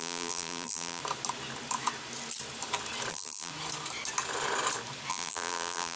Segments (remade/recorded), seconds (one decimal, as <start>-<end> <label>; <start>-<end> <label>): 0.0-1.0 remade; 1.0-3.1 recorded; 3.1-3.5 remade; 3.5-5.1 recorded; 5.1-6.0 remade